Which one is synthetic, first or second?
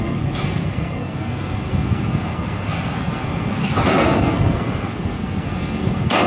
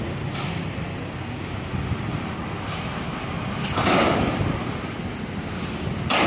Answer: first